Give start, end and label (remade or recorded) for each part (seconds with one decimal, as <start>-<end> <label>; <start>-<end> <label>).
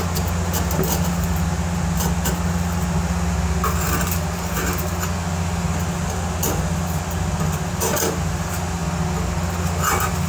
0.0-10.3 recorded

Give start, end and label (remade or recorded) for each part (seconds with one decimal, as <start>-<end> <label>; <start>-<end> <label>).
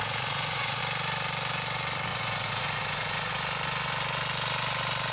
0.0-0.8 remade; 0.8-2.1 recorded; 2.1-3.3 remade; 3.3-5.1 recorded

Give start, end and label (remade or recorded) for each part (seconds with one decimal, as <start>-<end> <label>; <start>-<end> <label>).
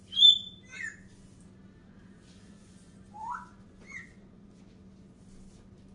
0.0-1.8 recorded; 1.8-4.6 remade; 4.6-5.9 recorded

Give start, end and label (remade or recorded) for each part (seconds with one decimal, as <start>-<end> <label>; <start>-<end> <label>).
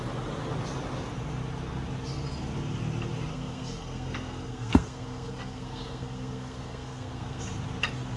0.0-3.3 recorded; 3.3-7.4 remade; 7.4-8.2 recorded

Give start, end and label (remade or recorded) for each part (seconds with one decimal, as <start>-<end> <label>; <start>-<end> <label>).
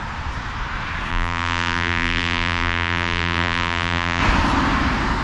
0.0-1.1 recorded; 1.1-4.2 remade; 4.2-5.2 recorded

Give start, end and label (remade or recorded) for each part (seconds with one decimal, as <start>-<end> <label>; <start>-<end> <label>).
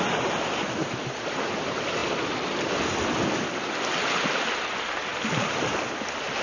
0.0-0.8 recorded; 0.8-1.5 remade; 1.5-5.1 recorded; 5.1-5.7 remade; 5.7-6.4 recorded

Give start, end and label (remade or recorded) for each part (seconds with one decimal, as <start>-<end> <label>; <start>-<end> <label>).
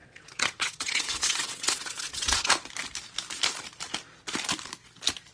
0.0-2.5 remade; 2.5-5.3 recorded